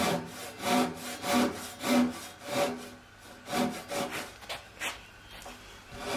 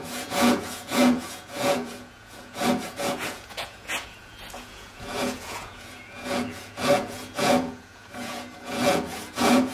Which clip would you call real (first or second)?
first